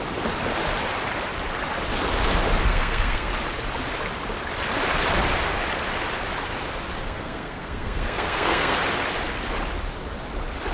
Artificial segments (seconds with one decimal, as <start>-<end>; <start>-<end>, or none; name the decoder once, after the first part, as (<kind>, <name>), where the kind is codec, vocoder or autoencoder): 2.7-3.3 (codec, SNAC); 7.0-8.8